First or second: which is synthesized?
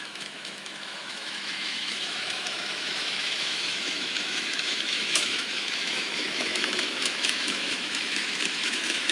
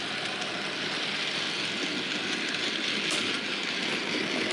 first